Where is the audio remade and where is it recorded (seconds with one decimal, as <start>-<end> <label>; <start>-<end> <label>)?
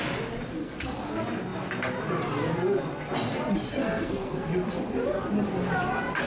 0.0-0.6 recorded; 0.6-1.1 remade; 1.1-3.7 recorded; 3.7-4.5 remade; 4.5-6.3 recorded